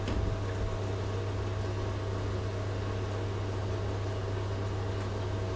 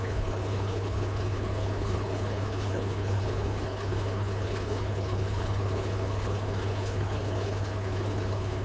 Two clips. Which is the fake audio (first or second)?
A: second